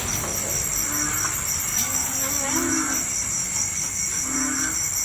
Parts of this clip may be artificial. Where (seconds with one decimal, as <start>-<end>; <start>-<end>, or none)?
1.7-2.3; 3.4-4.1